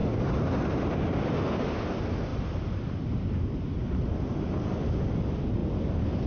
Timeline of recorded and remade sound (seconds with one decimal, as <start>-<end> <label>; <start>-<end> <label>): 0.0-6.3 recorded